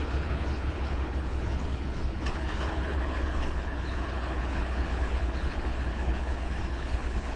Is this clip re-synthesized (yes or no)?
yes